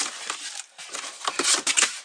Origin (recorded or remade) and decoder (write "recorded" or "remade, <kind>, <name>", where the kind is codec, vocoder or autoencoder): recorded